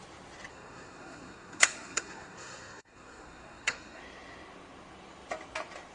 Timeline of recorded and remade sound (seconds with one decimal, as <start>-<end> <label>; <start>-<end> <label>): 0.0-0.5 recorded; 0.5-4.0 remade; 4.0-5.9 recorded